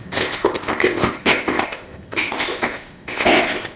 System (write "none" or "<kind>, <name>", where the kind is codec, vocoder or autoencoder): codec, ZipCodec